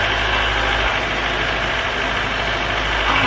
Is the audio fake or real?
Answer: real